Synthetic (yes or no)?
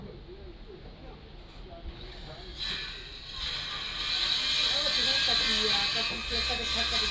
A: no